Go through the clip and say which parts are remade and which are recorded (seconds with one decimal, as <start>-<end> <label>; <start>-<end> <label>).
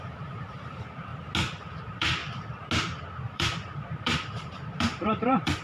0.0-1.1 remade; 1.1-1.7 recorded; 1.7-2.2 remade; 2.2-3.3 recorded; 3.3-5.6 remade